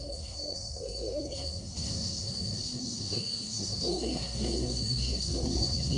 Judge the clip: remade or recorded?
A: remade